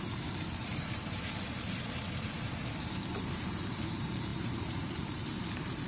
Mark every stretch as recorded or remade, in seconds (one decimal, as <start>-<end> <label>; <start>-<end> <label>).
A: 0.0-5.9 remade